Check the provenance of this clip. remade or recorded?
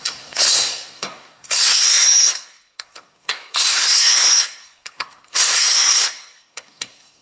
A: remade